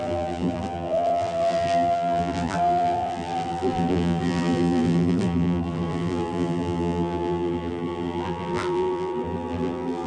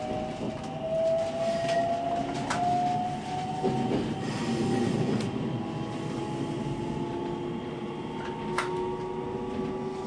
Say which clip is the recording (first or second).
second